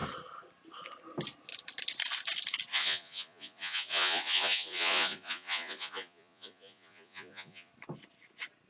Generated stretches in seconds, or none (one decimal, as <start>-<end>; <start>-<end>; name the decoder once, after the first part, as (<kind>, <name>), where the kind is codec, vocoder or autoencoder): 2.7-7.7 (vocoder, Vocos)